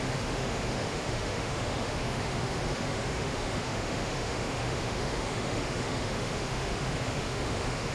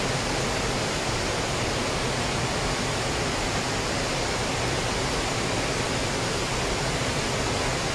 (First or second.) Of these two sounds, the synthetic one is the first